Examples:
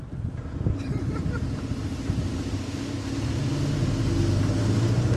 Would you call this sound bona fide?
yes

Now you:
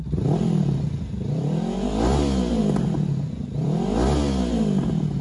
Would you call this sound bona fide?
yes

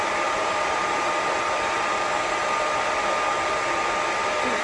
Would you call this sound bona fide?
yes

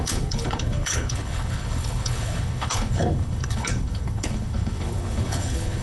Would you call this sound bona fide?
no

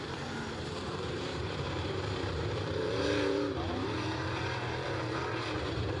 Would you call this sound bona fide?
no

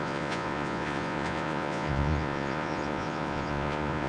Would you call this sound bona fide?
no